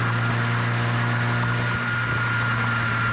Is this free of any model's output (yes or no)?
yes